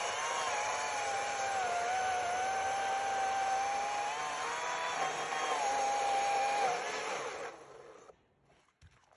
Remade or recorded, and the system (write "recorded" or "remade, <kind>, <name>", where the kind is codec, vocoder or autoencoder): recorded